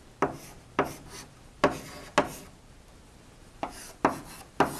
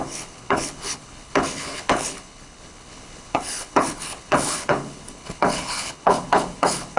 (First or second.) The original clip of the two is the first